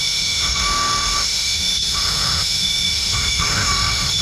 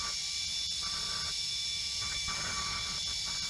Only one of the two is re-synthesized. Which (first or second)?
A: first